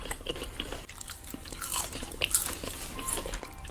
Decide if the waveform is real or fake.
fake